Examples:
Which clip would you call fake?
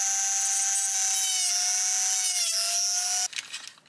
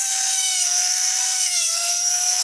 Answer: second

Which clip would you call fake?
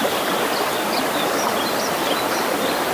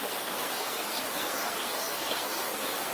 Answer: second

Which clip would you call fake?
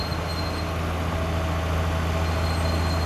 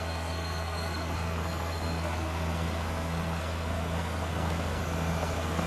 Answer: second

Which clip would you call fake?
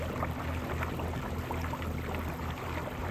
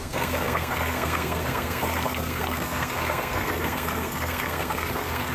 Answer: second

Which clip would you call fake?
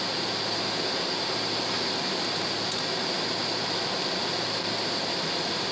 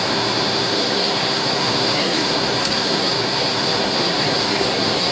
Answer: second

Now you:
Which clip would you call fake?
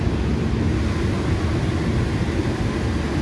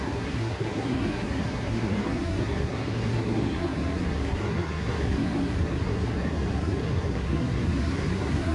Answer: second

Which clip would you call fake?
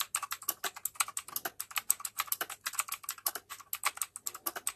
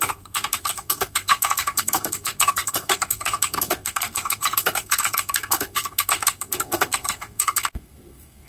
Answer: second